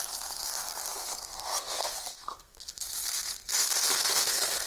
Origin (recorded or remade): remade